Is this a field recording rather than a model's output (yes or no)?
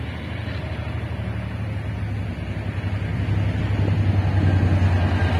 yes